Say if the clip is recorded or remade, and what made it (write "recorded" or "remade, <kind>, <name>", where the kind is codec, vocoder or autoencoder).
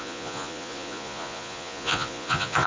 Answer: remade, vocoder, Vocos